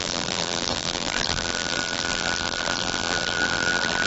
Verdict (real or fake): fake